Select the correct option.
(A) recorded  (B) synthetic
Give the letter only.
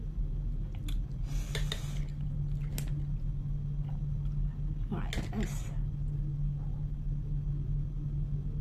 A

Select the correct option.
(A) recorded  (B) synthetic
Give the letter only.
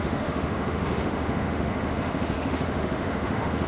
B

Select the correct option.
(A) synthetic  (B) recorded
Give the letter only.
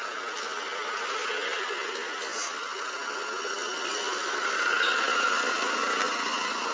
B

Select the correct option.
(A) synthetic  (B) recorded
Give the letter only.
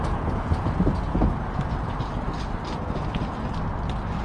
B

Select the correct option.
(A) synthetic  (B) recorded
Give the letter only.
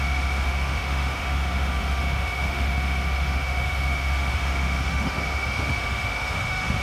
A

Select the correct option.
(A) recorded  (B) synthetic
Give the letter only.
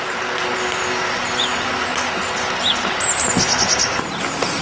A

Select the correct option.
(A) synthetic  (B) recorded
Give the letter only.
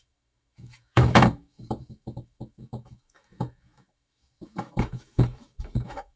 A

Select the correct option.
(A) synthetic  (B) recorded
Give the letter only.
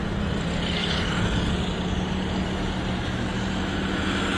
B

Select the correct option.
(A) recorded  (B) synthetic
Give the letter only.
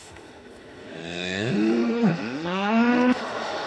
B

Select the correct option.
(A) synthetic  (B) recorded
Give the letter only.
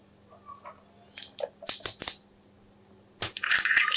B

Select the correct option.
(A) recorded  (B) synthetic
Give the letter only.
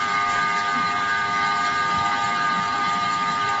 A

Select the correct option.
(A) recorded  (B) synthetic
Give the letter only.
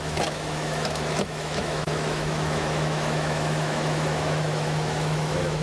B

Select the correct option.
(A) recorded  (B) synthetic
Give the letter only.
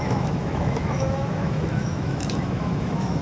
B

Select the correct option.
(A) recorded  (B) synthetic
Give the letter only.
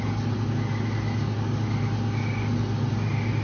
A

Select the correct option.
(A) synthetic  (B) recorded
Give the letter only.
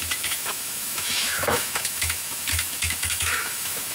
A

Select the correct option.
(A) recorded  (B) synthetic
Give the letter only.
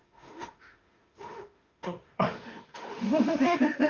B